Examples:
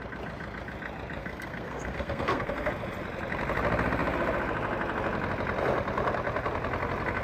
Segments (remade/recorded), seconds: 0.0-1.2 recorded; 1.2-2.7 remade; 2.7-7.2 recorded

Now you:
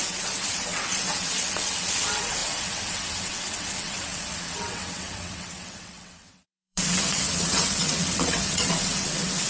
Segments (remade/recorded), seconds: 0.0-9.5 remade

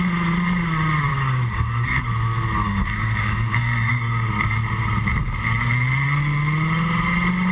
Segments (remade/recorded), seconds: 0.0-1.1 recorded; 1.1-2.0 remade; 2.0-2.6 recorded; 2.6-4.3 remade; 4.3-7.5 recorded